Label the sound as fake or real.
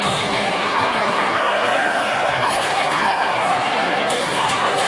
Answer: fake